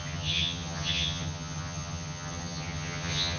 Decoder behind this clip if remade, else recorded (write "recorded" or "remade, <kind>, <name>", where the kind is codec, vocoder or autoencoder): remade, vocoder, HiFi-GAN